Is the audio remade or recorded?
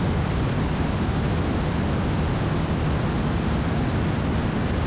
recorded